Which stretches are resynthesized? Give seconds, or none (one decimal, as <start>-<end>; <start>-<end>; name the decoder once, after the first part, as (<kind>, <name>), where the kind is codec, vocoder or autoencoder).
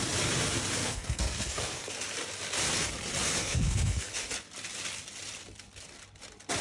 0.8-1.9 (codec, SNAC); 3.4-4.1